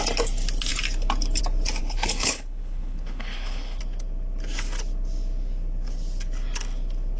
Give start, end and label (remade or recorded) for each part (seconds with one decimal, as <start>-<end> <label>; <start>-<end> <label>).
0.0-1.8 recorded; 1.8-3.8 remade; 3.8-7.2 recorded